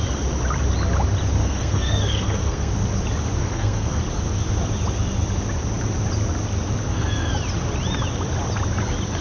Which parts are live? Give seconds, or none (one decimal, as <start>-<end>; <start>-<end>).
0.0-1.4; 2.7-3.4; 4.0-6.8; 7.3-9.2